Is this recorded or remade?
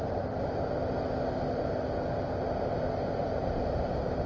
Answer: recorded